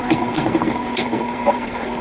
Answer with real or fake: fake